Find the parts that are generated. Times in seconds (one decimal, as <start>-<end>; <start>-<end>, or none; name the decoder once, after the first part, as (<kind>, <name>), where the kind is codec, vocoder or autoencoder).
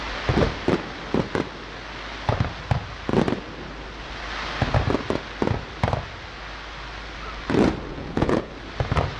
7.9-8.5 (vocoder, Vocos)